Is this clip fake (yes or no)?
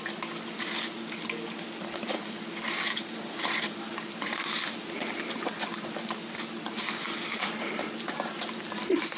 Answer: no